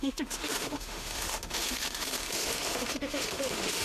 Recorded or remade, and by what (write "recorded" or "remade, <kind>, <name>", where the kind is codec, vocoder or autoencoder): remade, autoencoder, DAC-VAE